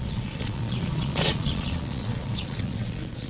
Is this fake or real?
fake